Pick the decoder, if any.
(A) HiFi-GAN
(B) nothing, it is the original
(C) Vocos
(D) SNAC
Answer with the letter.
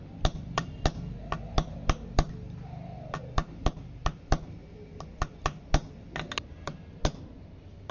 B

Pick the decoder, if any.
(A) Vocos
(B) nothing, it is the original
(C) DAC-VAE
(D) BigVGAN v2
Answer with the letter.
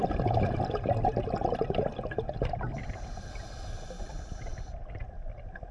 B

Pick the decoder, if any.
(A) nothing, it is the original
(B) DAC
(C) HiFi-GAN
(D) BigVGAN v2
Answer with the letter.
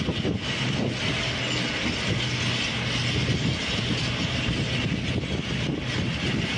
A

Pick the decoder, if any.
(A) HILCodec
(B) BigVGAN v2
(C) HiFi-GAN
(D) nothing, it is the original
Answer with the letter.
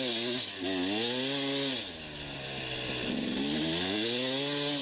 D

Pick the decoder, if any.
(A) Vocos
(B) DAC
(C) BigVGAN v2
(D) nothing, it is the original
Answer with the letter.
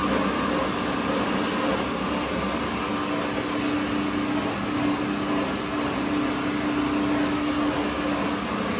D